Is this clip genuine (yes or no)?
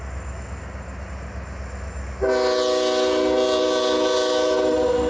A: yes